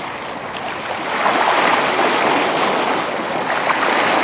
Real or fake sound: real